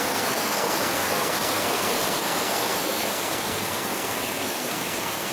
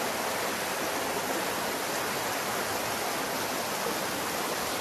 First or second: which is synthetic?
first